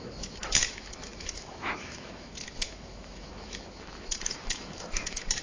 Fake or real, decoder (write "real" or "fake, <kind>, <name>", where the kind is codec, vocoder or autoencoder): fake, autoencoder, DAC-VAE